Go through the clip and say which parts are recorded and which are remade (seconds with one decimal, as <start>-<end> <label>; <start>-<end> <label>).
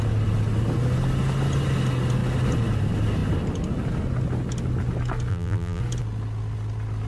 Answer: 0.0-5.3 recorded; 5.3-5.8 remade; 5.8-7.1 recorded